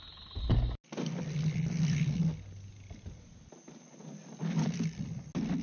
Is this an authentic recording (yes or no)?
yes